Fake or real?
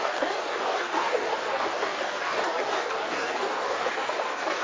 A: fake